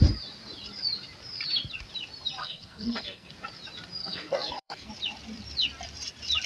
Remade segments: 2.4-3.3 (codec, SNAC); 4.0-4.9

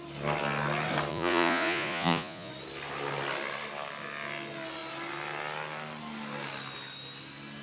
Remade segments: 1.1-2.5 (vocoder, Vocos)

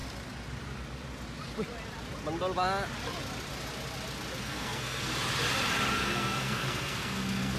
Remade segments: 4.4-5.1 (codec, SNAC); 5.9-7.6

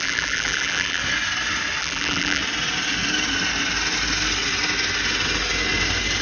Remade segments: 0.0-1.0 (vocoder, BigVGAN v2); 1.8-2.4